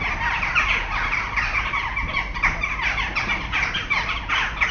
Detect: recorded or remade recorded